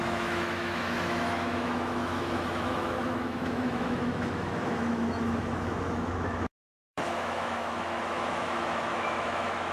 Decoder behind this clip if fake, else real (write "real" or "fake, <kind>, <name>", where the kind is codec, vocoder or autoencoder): fake, autoencoder, DAC-VAE